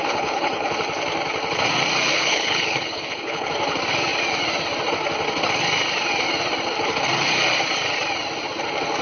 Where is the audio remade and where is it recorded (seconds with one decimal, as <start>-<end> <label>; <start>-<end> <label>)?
0.0-0.7 remade; 0.7-2.1 recorded; 2.1-3.5 remade; 3.5-9.0 recorded